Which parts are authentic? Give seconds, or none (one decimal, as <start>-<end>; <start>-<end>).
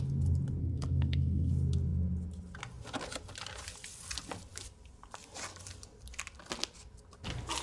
0.0-0.6; 1.5-7.6